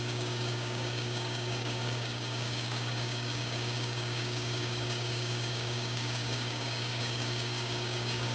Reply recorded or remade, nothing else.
remade